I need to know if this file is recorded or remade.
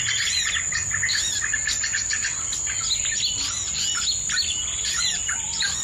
recorded